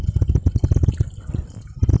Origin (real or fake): real